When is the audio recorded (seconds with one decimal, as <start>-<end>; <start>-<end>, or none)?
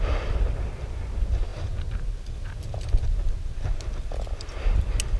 0.0-5.2